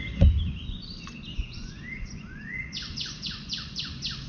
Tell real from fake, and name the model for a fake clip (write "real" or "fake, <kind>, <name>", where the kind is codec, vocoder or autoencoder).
fake, vocoder, Vocos